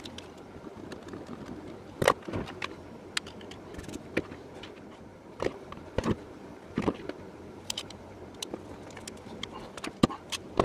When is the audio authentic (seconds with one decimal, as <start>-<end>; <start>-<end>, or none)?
0.0-5.1; 8.1-10.6